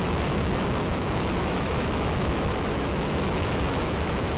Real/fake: fake